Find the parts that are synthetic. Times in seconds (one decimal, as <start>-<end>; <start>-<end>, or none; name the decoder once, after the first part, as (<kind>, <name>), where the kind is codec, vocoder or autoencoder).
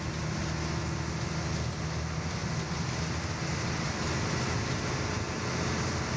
none